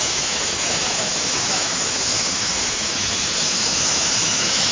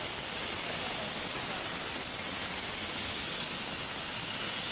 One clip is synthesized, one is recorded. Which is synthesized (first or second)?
first